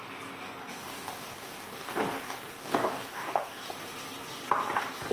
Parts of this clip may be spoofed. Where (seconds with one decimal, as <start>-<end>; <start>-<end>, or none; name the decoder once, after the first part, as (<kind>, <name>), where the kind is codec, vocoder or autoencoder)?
0.6-3.7 (codec, DAC)